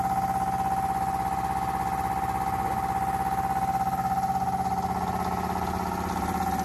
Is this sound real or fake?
real